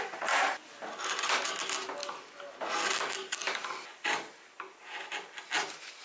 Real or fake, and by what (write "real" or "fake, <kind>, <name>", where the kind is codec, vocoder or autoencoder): real